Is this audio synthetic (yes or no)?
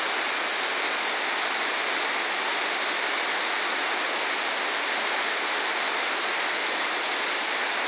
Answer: no